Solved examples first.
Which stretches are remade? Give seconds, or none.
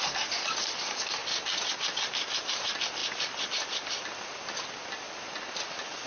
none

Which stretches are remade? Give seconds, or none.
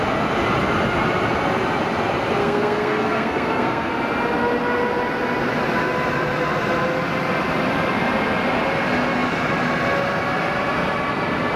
2.4-3.9 (codec, SNAC)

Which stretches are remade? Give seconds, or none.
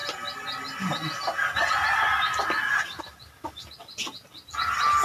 none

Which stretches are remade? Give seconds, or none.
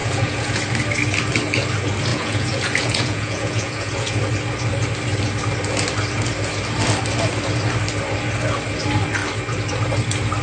0.0-0.6 (vocoder, Vocos); 2.1-4.2